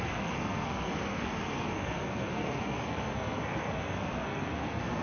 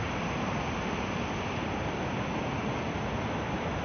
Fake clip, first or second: first